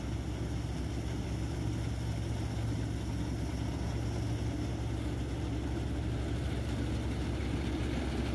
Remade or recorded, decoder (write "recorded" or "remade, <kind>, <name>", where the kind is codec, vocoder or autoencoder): recorded